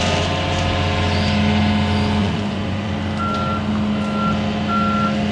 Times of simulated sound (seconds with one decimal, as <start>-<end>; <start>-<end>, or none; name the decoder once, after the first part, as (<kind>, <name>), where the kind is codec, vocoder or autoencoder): 2.2-2.9 (vocoder, Vocos)